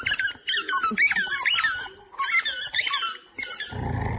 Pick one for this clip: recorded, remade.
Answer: recorded